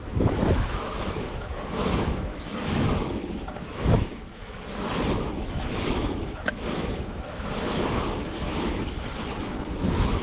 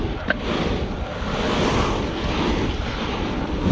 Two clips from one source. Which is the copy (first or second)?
first